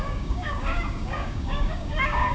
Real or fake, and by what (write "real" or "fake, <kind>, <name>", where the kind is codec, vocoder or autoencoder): fake, codec, DAC